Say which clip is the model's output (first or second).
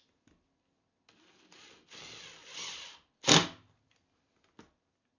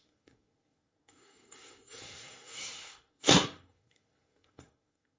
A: second